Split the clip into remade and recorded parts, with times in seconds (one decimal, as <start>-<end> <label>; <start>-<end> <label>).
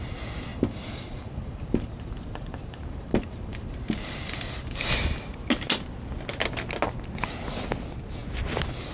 0.0-0.5 recorded; 0.5-4.9 remade; 4.9-8.9 recorded